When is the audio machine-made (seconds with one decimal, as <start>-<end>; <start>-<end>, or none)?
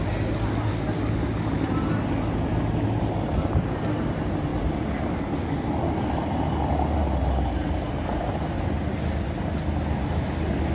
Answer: none